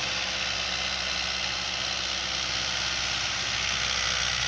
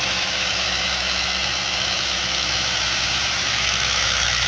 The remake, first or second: second